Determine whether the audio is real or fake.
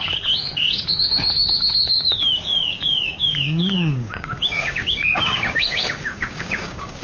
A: fake